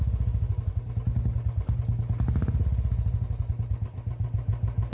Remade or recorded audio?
recorded